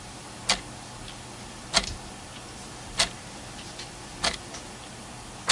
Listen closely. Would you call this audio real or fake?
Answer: real